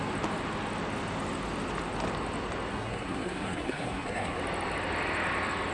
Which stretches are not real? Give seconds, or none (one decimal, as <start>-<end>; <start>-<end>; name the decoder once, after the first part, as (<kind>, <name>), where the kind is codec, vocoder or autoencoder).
2.7-4.4 (codec, SNAC)